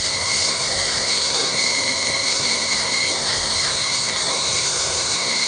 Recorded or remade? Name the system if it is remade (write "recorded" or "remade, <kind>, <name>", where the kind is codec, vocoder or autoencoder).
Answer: remade, codec, SNAC